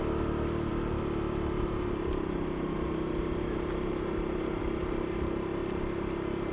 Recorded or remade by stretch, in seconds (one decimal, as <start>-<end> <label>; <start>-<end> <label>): 0.0-6.5 recorded